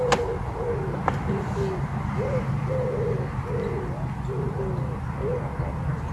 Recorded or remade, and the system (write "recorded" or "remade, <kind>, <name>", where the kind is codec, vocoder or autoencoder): recorded